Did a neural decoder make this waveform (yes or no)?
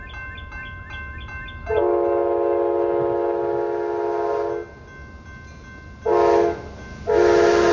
no